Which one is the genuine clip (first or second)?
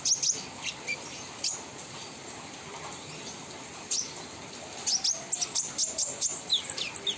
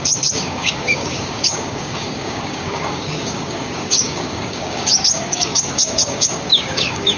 first